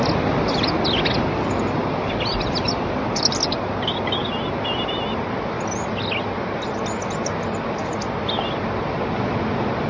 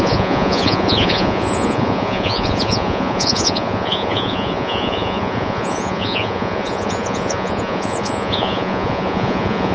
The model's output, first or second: second